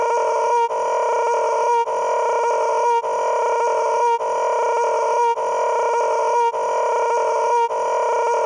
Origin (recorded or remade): recorded